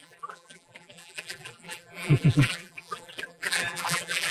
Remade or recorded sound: remade